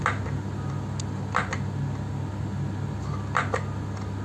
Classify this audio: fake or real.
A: real